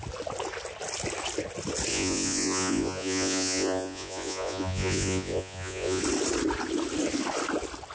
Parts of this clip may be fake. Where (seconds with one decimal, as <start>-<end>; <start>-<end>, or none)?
1.9-6.0